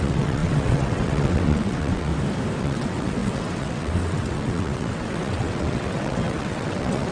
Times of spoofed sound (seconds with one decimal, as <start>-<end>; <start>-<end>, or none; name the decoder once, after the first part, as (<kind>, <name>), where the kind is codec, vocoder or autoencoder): 0.0-2.1 (vocoder, WaveNeXt); 2.6-7.1